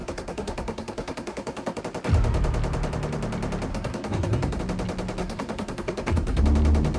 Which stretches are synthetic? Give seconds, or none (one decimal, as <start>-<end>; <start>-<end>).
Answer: 0.0-1.8; 3.7-4.6; 5.2-6.4